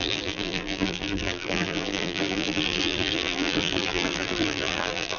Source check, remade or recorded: remade